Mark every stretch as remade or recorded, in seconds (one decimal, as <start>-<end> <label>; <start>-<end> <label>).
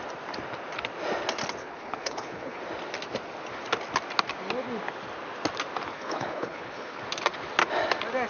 0.0-1.6 recorded; 1.6-2.6 remade; 2.6-5.9 recorded; 5.9-7.0 remade; 7.0-8.3 recorded